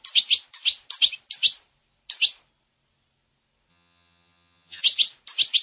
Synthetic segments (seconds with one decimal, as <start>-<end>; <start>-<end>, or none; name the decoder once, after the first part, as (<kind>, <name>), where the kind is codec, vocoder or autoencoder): 3.7-4.8 (vocoder, HiFi-GAN)